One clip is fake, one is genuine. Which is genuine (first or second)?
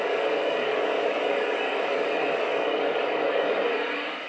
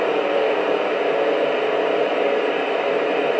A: second